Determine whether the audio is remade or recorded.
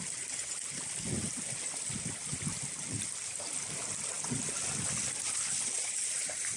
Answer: recorded